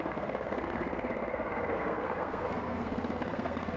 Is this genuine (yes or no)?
no